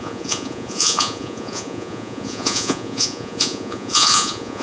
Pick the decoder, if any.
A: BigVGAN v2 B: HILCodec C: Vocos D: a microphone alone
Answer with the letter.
C